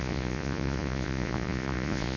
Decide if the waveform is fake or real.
fake